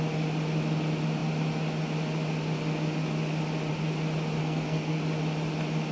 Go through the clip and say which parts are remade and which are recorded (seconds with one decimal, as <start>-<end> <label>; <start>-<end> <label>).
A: 0.0-4.4 recorded; 4.4-5.0 remade; 5.0-5.9 recorded